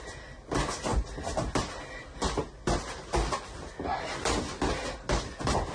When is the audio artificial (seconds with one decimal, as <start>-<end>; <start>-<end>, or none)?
none